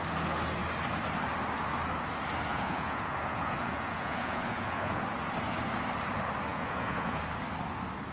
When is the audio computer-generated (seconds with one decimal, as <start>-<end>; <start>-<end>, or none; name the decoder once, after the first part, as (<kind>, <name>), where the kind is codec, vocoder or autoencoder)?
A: 2.5-5.0 (vocoder, Vocos); 6.5-7.2